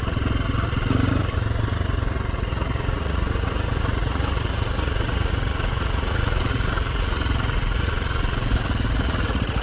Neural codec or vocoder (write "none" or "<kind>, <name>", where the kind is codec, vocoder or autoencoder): vocoder, Vocos